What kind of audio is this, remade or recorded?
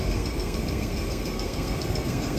remade